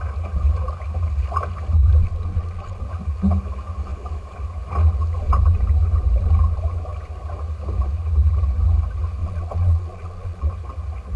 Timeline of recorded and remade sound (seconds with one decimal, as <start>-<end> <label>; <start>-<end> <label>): 0.0-2.0 recorded; 2.0-2.8 remade; 2.8-9.2 recorded; 9.2-10.5 remade; 10.5-11.2 recorded